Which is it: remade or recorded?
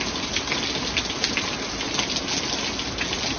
recorded